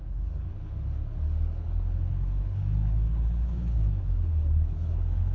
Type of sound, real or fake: fake